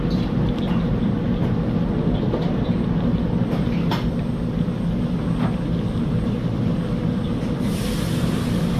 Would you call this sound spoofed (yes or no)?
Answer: no